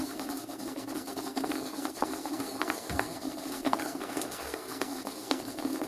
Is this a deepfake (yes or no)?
yes